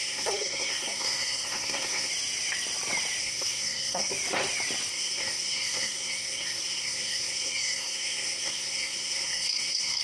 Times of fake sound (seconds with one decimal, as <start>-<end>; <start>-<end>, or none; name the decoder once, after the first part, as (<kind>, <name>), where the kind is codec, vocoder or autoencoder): 0.0-2.1 (codec, SNAC); 3.2-4.1; 4.9-10.0